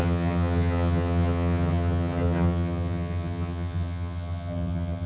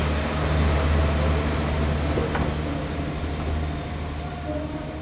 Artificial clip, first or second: first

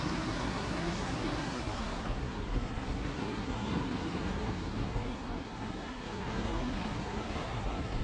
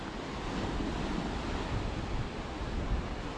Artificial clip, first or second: first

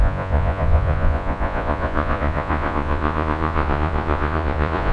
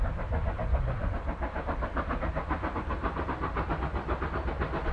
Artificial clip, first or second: first